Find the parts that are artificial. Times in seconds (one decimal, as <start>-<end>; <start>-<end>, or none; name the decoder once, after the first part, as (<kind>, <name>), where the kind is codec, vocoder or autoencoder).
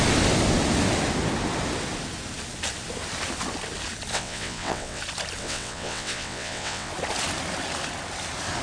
4.1-5.0 (vocoder, WaveNeXt); 5.4-6.9